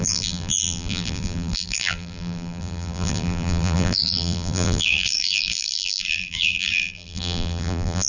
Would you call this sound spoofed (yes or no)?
yes